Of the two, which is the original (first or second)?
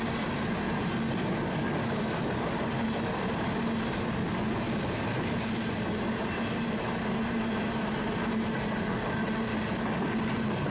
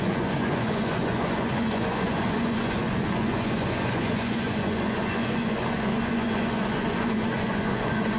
first